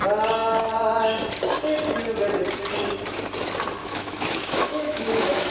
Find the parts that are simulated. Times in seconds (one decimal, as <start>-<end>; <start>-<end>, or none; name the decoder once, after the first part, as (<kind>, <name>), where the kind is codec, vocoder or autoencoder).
3.8-5.5 (autoencoder, DAC-VAE)